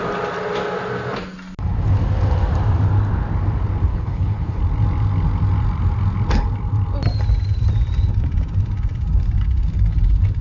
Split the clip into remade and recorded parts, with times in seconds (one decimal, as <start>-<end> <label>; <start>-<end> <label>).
0.0-3.9 recorded; 3.9-4.6 remade; 4.6-10.4 recorded

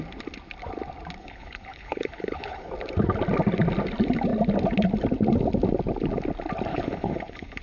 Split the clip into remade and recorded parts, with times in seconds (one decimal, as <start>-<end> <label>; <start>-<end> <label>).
0.0-1.2 recorded; 1.2-2.7 remade; 2.7-6.7 recorded; 6.7-7.6 remade

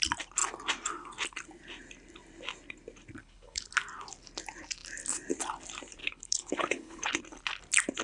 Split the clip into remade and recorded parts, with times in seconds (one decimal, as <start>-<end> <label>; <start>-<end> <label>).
0.0-3.2 recorded; 3.2-3.7 remade; 3.7-6.0 recorded; 6.0-7.2 remade; 7.2-8.0 recorded

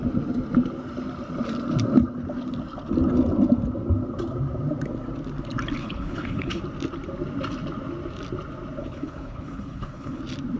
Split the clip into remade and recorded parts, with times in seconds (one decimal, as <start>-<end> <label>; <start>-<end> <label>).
0.0-5.8 recorded; 5.8-6.6 remade; 6.6-8.8 recorded; 8.8-10.2 remade; 10.2-10.6 recorded